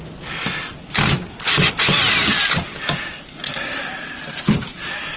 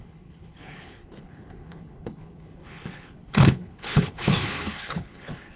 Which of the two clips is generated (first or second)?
second